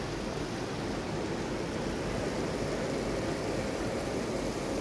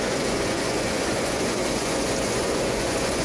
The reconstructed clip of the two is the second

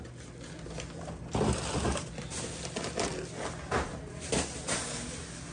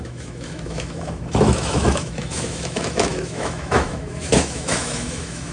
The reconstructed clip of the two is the second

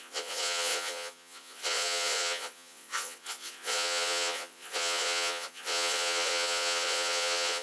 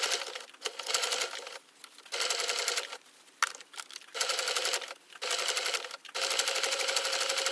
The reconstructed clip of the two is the first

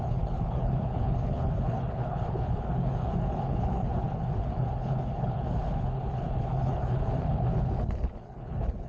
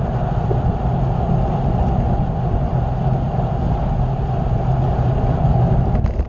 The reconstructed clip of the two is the first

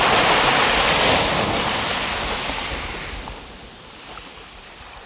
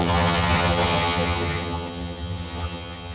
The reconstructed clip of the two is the second